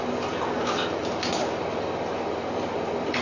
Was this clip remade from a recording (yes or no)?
no